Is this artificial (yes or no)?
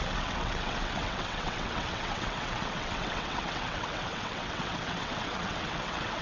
yes